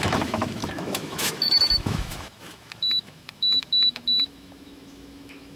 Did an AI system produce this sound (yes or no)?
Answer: yes